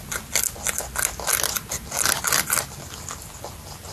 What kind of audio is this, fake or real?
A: real